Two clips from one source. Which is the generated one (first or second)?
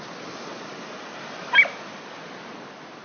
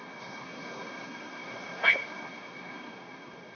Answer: second